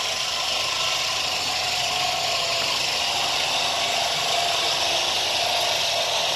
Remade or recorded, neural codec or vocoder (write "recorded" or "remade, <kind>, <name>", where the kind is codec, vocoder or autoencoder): recorded